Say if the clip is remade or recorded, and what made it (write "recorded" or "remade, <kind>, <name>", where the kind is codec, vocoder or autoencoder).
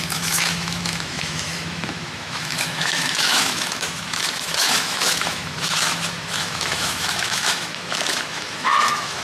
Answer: remade, autoencoder, DAC-VAE